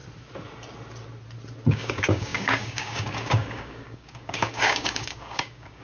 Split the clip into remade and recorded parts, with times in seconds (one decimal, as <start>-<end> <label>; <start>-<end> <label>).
0.0-1.7 recorded; 1.7-5.8 remade